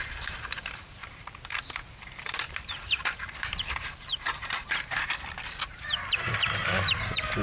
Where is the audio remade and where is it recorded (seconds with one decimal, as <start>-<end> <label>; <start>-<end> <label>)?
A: 0.0-7.4 remade